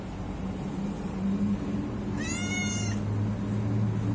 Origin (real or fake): real